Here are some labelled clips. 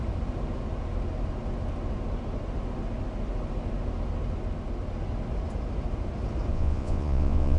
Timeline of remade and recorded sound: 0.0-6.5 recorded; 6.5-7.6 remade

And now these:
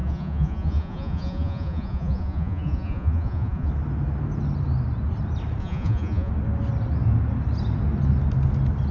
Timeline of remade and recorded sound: 0.0-3.7 remade; 3.7-5.6 recorded; 5.6-6.3 remade; 6.3-8.9 recorded

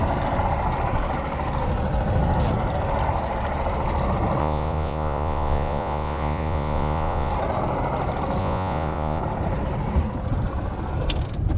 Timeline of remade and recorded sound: 0.0-4.4 recorded; 4.4-7.3 remade; 7.3-8.4 recorded; 8.4-9.2 remade; 9.2-11.6 recorded

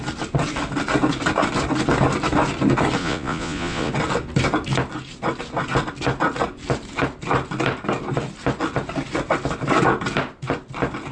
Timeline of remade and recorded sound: 0.0-3.0 recorded; 3.0-3.9 remade; 3.9-11.1 recorded

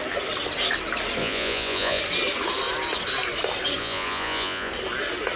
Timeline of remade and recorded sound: 0.0-1.2 recorded; 1.2-2.0 remade; 2.0-3.8 recorded; 3.8-4.7 remade; 4.7-5.4 recorded

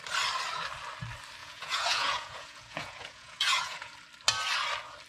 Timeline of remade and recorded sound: 0.0-1.4 recorded; 1.4-3.9 remade; 3.9-5.1 recorded